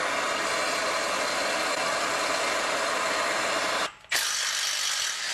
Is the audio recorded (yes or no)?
yes